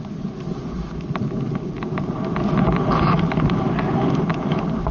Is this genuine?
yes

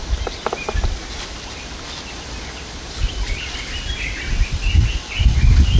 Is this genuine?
yes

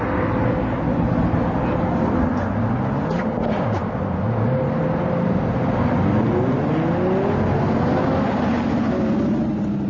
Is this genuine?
yes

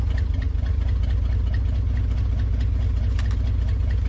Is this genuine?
yes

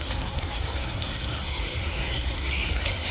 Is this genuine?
no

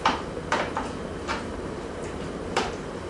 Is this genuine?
no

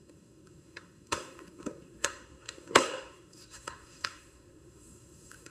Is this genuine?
no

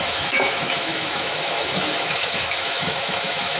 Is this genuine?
no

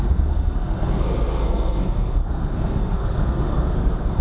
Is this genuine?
no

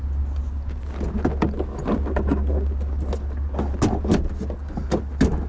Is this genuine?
yes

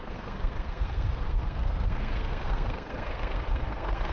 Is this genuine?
no